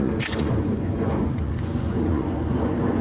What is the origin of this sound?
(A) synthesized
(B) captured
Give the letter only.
A